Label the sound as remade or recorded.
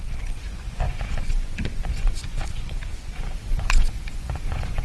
remade